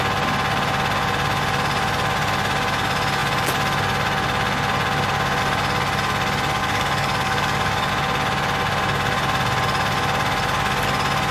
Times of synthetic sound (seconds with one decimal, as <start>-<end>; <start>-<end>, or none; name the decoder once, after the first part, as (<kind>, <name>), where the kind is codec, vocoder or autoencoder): 6.6-7.9 (codec, DAC)